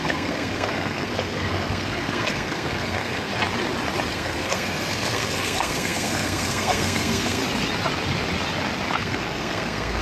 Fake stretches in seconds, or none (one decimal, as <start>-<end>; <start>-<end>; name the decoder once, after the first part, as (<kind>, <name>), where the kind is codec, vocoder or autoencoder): 0.0-3.3 (codec, SNAC); 4.1-7.4; 8.9-10.0